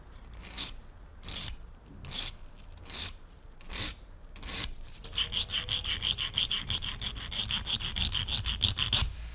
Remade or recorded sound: recorded